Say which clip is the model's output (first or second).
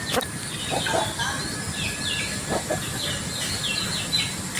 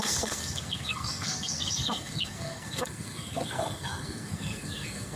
second